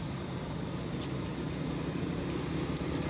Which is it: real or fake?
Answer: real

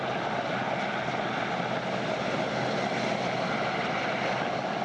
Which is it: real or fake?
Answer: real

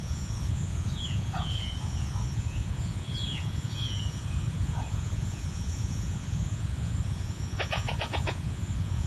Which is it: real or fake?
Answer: fake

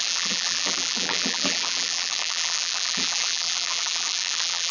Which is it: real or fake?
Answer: fake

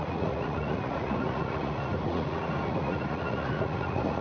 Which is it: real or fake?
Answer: fake